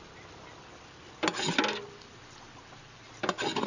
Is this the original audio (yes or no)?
yes